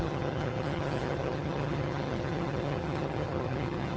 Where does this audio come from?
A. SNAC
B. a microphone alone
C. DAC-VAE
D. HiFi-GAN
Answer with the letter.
D